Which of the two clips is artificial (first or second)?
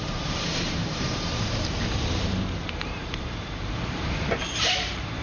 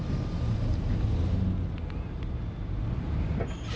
first